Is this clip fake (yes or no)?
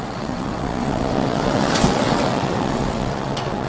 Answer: yes